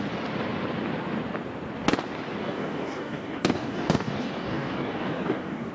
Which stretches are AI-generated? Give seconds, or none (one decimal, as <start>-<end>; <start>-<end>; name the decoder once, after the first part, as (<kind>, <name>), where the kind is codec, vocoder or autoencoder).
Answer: 2.4-5.7 (codec, DAC)